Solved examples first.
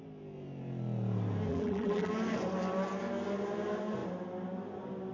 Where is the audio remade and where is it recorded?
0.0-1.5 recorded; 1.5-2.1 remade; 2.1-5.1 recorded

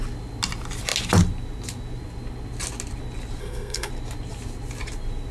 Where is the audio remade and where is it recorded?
0.0-3.4 recorded; 3.4-3.9 remade; 3.9-5.3 recorded

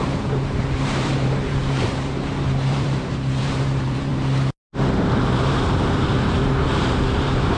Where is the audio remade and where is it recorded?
0.0-4.1 remade; 4.1-4.9 recorded; 4.9-7.6 remade

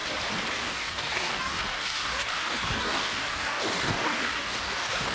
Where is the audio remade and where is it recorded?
0.0-0.5 recorded; 0.5-5.1 remade

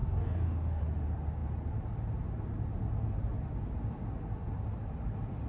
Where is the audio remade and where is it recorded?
0.0-0.8 remade; 0.8-5.5 recorded